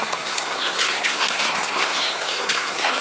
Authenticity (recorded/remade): remade